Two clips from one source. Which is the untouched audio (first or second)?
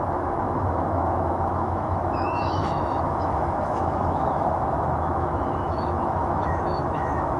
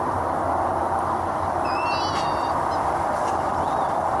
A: second